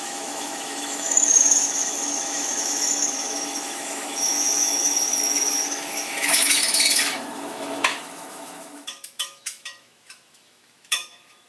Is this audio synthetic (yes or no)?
yes